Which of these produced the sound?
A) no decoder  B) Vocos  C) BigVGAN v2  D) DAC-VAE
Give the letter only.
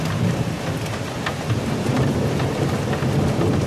A